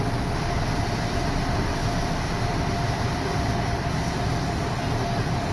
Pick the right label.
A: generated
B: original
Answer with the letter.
A